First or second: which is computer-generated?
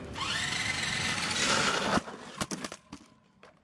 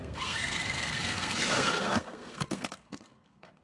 second